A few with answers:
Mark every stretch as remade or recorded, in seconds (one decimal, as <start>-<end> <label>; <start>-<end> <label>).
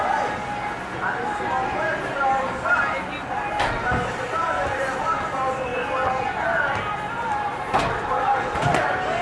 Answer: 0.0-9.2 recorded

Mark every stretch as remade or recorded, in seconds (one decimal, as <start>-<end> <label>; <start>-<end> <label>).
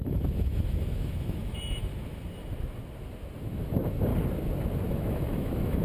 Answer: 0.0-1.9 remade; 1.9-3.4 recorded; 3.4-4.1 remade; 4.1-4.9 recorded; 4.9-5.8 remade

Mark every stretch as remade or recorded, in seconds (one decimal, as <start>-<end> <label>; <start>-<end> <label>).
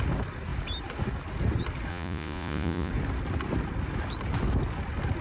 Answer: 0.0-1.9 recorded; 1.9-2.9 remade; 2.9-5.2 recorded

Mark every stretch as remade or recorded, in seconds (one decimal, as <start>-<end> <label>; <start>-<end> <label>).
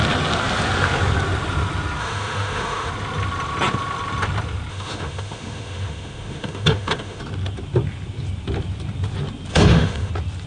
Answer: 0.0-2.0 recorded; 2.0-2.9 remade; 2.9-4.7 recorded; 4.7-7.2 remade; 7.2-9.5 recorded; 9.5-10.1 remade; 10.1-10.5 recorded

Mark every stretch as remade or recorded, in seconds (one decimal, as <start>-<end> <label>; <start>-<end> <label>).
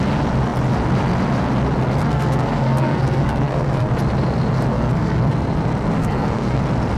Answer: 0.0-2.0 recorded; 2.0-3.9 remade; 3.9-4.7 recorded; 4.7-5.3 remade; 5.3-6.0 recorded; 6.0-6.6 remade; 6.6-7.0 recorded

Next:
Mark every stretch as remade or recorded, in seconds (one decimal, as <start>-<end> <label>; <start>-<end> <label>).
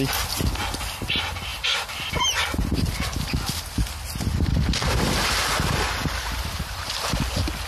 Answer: 0.0-1.5 recorded; 1.5-2.1 remade; 2.1-6.0 recorded; 6.0-6.9 remade; 6.9-7.7 recorded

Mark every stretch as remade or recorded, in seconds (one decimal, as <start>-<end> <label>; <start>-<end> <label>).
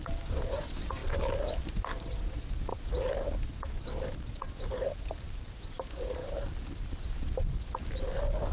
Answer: 0.0-2.7 remade; 2.7-4.1 recorded; 4.1-8.5 remade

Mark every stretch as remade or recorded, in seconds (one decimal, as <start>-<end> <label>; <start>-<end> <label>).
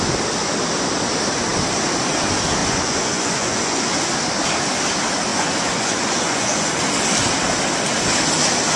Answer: 0.0-2.6 recorded; 2.6-3.8 remade; 3.8-5.3 recorded; 5.3-6.7 remade; 6.7-8.8 recorded